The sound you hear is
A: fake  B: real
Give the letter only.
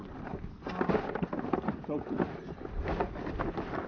B